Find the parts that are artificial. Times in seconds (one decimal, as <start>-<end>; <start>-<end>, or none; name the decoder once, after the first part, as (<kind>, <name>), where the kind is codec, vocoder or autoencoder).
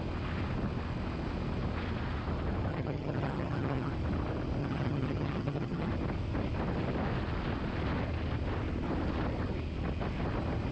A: 2.7-3.9 (vocoder, HiFi-GAN); 4.6-5.9